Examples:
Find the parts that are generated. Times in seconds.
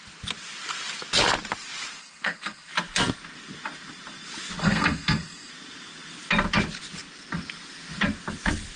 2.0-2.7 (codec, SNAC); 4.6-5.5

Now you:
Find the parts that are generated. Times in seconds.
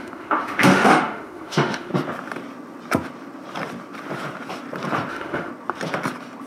0.0-1.9 (autoencoder, DAC-VAE); 5.1-5.5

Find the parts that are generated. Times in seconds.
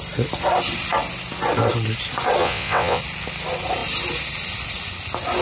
2.4-3.0 (vocoder, WaveNeXt)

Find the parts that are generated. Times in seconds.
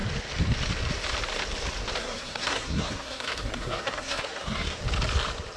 2.0-4.8 (codec, SNAC)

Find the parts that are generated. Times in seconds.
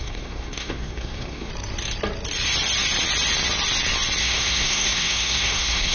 0.0-1.5 (codec, SNAC); 4.2-5.9